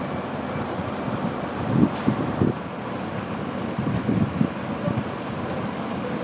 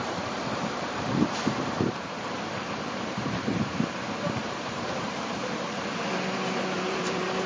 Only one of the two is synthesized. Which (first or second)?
second